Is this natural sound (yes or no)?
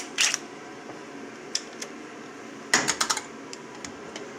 yes